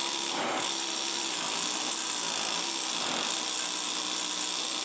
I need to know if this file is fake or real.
real